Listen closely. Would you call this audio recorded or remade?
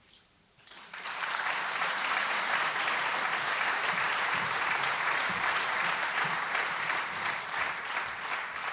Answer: remade